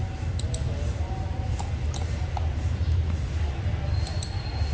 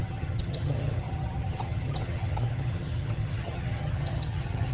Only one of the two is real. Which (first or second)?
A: first